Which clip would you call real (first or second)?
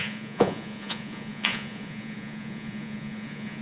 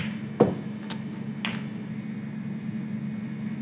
second